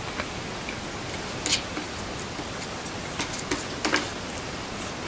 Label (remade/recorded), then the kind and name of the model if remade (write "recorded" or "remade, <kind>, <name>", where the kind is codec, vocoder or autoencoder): recorded